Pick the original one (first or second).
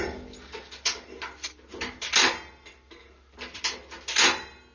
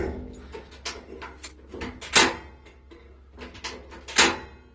second